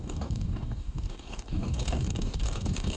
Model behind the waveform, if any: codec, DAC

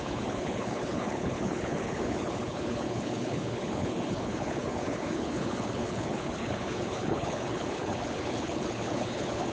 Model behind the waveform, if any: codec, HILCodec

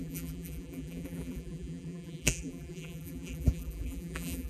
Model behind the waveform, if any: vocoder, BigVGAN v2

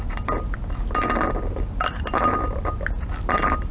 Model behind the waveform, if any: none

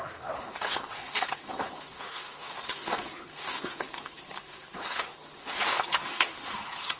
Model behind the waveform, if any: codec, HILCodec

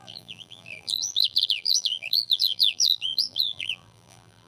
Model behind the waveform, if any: vocoder, BigVGAN v2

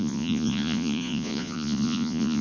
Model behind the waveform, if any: vocoder, Vocos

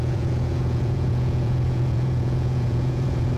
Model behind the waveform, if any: vocoder, Vocos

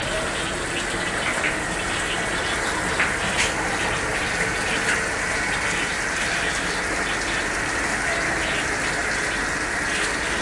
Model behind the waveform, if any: none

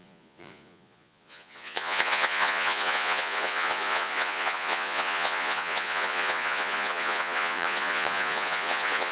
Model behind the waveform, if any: vocoder, Vocos